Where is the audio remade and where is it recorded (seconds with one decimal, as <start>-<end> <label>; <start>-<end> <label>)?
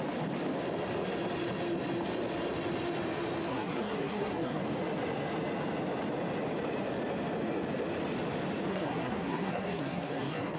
0.0-3.5 recorded; 3.5-4.6 remade; 4.6-8.7 recorded; 8.7-10.6 remade